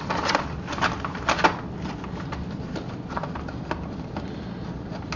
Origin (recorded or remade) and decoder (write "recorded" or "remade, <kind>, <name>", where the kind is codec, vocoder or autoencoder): recorded